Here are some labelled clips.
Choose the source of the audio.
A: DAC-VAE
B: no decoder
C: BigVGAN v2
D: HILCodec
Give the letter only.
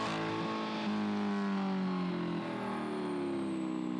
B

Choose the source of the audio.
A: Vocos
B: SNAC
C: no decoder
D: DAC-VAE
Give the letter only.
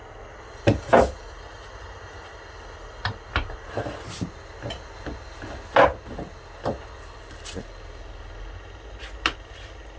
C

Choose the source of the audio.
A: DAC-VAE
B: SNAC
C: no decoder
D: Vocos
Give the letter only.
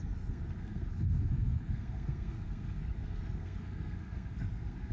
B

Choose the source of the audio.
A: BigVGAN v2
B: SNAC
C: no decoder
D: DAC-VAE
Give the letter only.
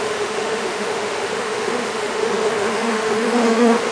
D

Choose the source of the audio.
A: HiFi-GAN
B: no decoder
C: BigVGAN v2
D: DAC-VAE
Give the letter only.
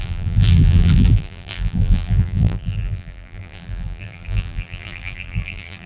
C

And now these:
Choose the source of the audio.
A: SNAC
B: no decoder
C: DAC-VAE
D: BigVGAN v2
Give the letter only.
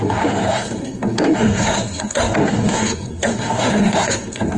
A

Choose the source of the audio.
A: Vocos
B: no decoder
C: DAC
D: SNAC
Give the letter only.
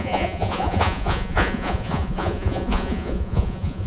A